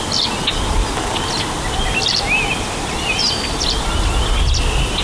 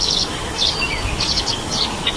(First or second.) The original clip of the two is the first